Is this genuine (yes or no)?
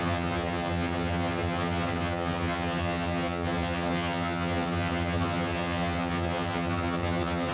no